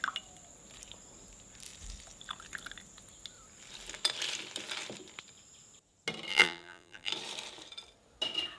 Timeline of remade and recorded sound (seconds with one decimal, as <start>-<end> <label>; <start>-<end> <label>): 0.0-6.3 recorded; 6.3-7.1 remade; 7.1-8.6 recorded